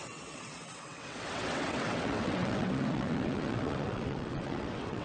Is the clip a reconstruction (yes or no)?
yes